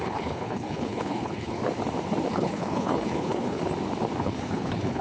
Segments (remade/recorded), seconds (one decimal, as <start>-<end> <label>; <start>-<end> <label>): 0.0-1.6 remade; 1.6-2.3 recorded; 2.3-3.6 remade; 3.6-4.2 recorded; 4.2-5.0 remade